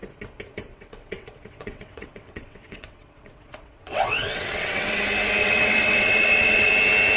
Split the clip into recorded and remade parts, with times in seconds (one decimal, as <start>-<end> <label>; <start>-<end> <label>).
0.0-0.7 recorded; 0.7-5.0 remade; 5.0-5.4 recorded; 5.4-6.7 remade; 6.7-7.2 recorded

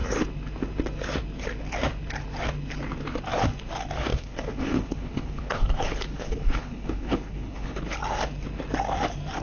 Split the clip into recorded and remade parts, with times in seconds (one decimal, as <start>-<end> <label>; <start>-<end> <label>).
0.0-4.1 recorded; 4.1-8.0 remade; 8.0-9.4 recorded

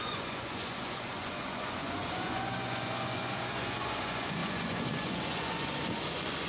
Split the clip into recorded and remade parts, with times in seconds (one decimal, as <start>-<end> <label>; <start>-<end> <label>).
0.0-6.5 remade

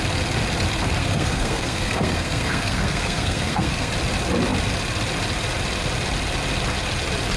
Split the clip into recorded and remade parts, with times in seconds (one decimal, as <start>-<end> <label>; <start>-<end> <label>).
0.0-1.0 recorded; 1.0-3.9 remade; 3.9-7.4 recorded

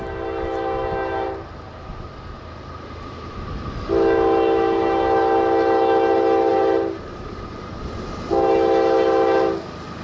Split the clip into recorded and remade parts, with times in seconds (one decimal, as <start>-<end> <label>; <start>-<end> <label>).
0.0-6.5 recorded; 6.5-7.6 remade; 7.6-10.0 recorded

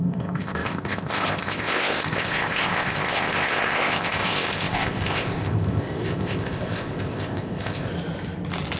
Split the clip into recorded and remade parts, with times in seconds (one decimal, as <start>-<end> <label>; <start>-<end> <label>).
0.0-7.9 remade; 7.9-8.8 recorded

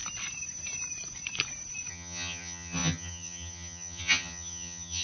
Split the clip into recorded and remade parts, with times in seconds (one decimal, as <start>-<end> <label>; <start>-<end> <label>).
0.0-1.9 recorded; 1.9-5.0 remade